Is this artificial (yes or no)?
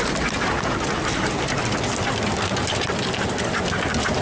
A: no